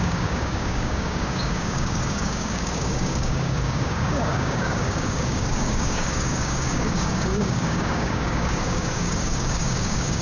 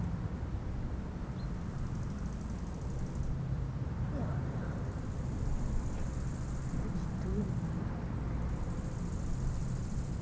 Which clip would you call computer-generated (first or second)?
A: first